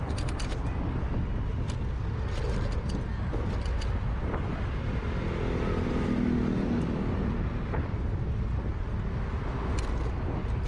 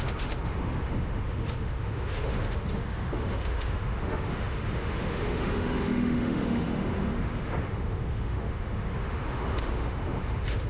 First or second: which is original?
first